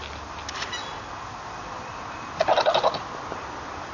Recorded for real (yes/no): yes